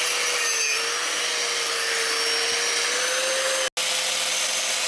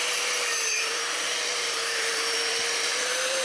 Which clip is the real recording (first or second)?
first